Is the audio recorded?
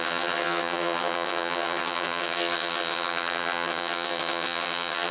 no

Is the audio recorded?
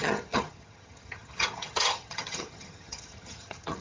no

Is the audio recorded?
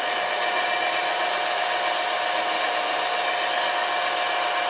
yes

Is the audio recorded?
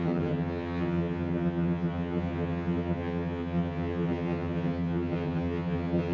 no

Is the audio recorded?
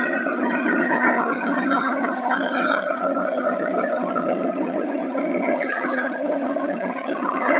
no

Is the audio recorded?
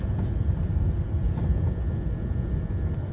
yes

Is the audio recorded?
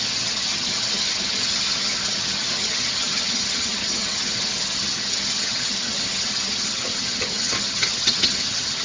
no